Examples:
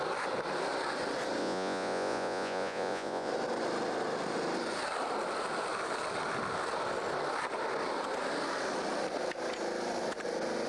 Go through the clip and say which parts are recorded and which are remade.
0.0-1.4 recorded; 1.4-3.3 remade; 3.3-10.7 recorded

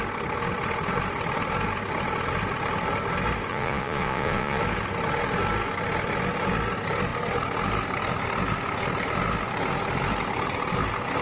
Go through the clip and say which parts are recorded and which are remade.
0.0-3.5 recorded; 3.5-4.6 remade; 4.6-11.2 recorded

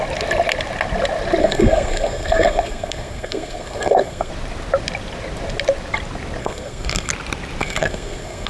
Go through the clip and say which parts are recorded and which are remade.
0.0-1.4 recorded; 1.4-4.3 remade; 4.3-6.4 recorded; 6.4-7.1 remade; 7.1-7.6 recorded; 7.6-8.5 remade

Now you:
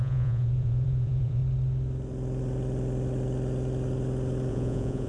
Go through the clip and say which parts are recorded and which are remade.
0.0-1.4 remade; 1.4-4.5 recorded; 4.5-5.1 remade

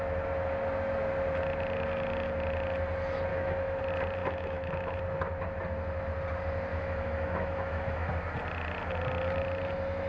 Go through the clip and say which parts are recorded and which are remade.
0.0-3.3 recorded; 3.3-3.8 remade; 3.8-4.2 recorded; 4.2-5.0 remade; 5.0-6.7 recorded; 6.7-8.1 remade; 8.1-10.1 recorded

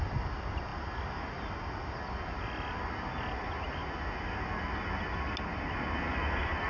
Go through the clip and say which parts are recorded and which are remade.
0.0-6.7 recorded